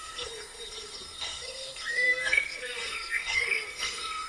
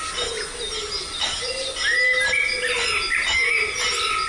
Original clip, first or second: second